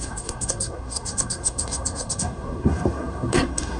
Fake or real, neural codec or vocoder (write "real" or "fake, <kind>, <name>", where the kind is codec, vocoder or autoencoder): fake, codec, SNAC